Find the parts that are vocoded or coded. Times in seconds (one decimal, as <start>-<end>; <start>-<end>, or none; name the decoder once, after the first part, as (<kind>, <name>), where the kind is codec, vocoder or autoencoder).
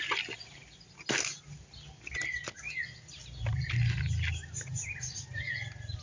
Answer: none